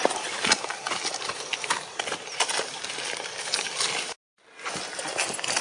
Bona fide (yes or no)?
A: yes